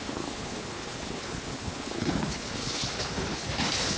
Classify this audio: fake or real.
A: fake